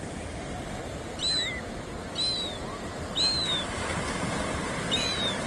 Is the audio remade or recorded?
recorded